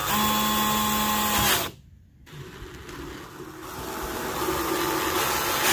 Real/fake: real